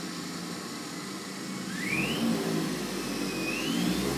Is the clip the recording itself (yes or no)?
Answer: yes